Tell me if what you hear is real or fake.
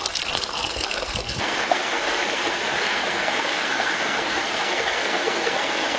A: fake